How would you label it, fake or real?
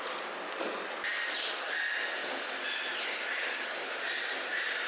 real